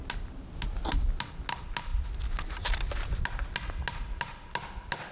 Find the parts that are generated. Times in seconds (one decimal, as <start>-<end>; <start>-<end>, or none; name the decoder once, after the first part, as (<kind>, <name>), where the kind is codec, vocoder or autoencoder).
none